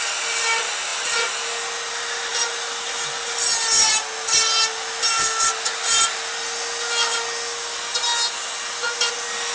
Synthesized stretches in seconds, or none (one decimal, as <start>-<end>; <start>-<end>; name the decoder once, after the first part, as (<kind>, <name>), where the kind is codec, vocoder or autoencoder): none